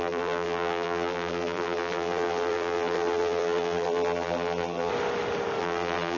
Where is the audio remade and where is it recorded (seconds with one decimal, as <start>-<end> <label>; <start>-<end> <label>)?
0.0-4.9 remade; 4.9-5.6 recorded; 5.6-6.2 remade